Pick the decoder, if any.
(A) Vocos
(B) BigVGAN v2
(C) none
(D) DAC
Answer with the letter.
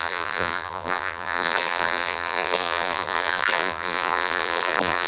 B